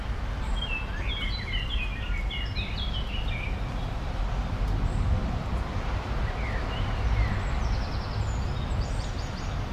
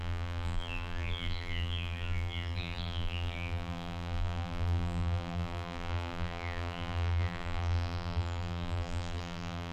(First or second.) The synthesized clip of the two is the second